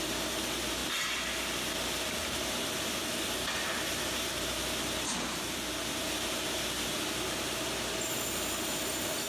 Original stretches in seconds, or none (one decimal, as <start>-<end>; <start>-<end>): 0.0-9.3